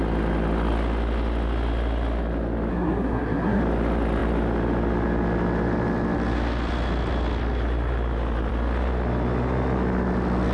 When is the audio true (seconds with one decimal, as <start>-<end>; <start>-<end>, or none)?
0.0-2.7; 3.6-10.5